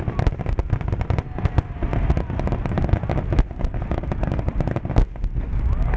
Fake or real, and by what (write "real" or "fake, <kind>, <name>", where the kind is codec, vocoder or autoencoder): real